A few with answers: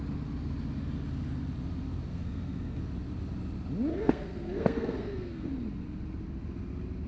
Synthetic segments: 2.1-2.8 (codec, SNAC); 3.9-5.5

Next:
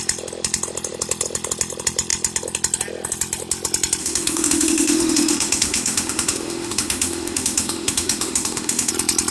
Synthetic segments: 4.0-8.9 (autoencoder, DAC-VAE)

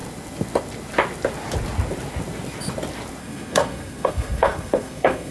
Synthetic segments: 3.2-5.3 (codec, SNAC)

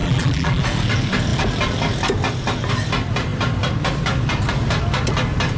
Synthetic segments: 0.0-0.6 (vocoder, BigVGAN v2)

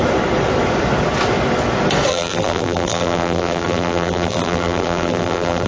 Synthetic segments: 2.1-5.7 (vocoder, BigVGAN v2)

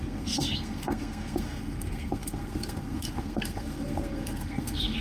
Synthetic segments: 0.0-5.0 (codec, SNAC)

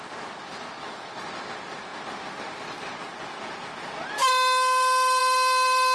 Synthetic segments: none

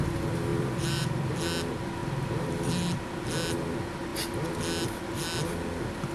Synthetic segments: 0.5-1.3 (vocoder, BigVGAN v2); 2.0-2.7